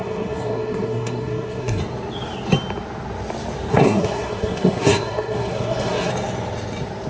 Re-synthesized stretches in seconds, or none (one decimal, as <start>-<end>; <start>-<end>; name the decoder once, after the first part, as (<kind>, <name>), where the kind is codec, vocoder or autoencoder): 0.0-1.8 (codec, SNAC); 3.7-6.1